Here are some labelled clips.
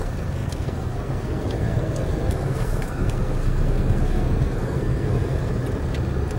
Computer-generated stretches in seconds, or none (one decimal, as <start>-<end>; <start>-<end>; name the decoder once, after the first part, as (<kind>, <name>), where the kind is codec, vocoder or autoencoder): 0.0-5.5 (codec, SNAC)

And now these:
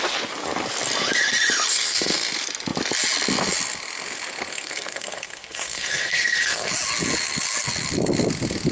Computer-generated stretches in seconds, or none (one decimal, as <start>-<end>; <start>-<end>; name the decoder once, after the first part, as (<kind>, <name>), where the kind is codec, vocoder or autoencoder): 1.7-2.3 (codec, SNAC); 4.5-6.7

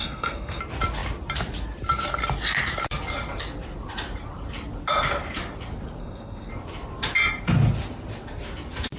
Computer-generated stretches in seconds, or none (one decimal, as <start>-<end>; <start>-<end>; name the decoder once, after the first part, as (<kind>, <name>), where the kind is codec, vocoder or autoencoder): 0.0-0.6 (codec, SNAC); 6.0-6.5

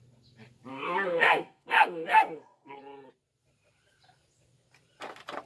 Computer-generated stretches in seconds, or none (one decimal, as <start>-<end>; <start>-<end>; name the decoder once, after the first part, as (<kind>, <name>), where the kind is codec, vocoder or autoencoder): 0.7-2.8 (codec, SNAC)

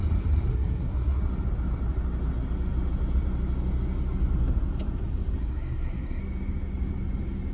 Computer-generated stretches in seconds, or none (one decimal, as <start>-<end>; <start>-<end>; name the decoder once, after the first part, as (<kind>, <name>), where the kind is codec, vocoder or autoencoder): 0.5-1.2 (codec, SNAC); 5.4-6.2

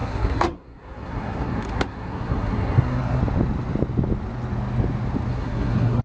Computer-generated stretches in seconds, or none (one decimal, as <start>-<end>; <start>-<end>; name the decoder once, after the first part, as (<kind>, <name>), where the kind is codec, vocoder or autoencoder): 0.0-3.2 (codec, SNAC); 5.3-6.0

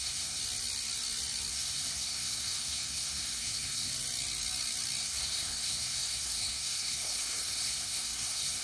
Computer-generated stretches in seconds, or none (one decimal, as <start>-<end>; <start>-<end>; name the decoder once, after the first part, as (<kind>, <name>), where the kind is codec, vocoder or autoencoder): 0.0-0.4 (codec, SNAC); 1.5-3.9; 5.0-8.6

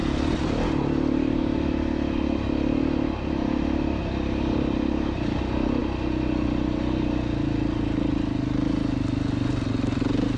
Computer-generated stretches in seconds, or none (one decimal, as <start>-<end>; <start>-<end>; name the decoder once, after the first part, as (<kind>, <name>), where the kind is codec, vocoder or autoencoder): none